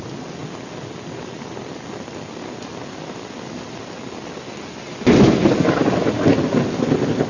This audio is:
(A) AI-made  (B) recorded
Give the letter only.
B